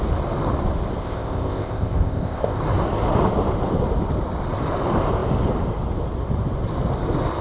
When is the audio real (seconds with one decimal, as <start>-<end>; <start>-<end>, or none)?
0.0-1.0; 2.6-7.4